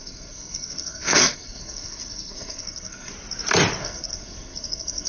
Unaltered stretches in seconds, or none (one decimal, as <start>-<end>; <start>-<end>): 3.1-3.8